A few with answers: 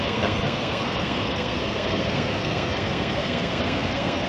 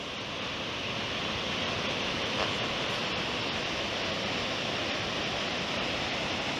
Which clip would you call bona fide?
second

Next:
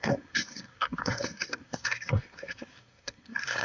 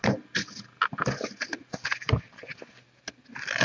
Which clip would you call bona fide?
second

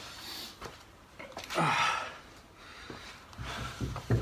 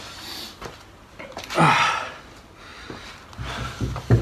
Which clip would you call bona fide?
second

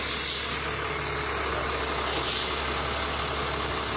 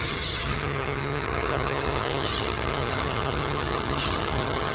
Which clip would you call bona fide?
first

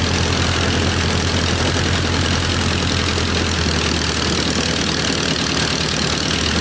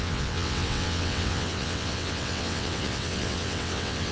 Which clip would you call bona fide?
first